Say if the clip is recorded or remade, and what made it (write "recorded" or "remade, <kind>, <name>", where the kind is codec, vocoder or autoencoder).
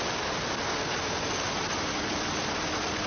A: recorded